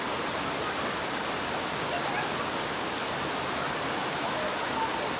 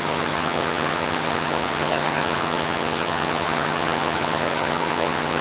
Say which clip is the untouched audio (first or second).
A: first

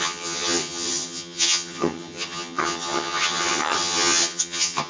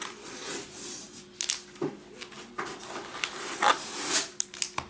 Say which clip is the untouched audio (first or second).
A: second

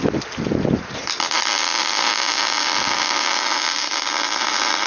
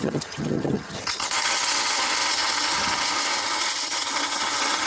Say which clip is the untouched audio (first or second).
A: first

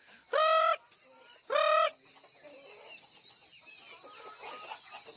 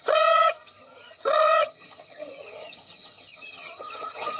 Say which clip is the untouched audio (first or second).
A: first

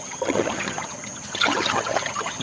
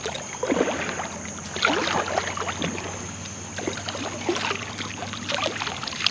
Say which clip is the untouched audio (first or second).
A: second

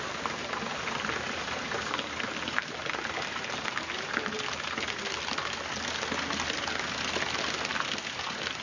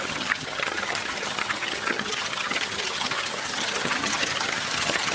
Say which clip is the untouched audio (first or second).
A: first